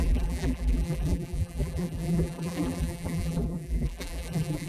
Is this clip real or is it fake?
fake